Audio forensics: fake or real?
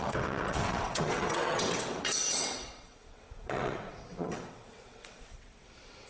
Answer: fake